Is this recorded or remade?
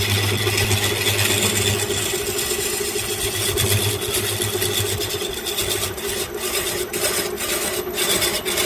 recorded